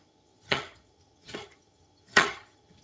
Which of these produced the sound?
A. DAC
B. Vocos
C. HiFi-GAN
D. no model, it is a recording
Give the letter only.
C